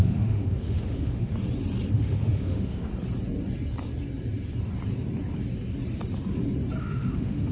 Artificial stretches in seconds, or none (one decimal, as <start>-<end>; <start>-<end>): 0.0-1.3; 1.9-2.9; 6.8-7.5